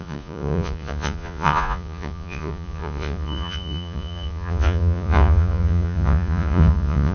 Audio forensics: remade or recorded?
remade